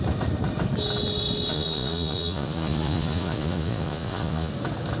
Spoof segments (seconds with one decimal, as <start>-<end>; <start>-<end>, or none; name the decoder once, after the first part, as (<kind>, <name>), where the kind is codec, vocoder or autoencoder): 1.5-4.5 (vocoder, Vocos)